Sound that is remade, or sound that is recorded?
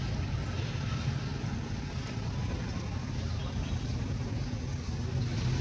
recorded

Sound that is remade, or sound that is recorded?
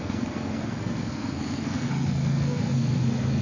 remade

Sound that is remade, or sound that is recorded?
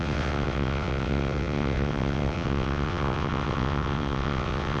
remade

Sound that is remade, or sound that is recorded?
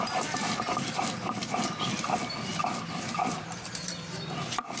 remade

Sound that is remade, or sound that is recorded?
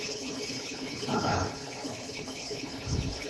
remade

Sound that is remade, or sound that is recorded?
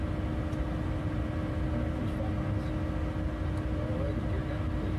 recorded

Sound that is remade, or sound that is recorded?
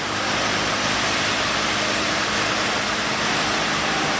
recorded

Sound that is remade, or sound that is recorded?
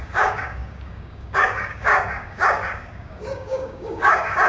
remade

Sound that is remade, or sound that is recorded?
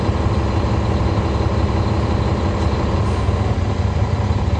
recorded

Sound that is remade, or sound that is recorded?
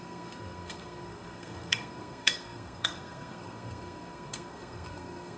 remade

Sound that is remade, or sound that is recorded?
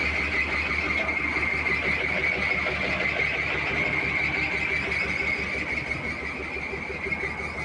recorded